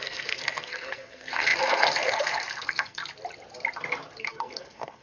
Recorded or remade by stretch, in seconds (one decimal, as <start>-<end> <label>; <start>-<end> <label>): 0.0-3.0 remade; 3.0-4.2 recorded; 4.2-5.0 remade